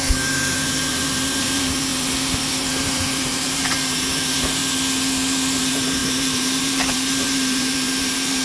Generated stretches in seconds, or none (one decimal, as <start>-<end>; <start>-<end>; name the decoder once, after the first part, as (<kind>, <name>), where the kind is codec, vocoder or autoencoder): 0.0-4.6 (vocoder, BigVGAN v2); 5.6-8.4